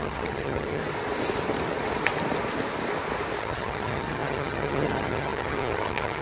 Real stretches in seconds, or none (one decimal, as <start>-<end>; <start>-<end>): 0.8-3.4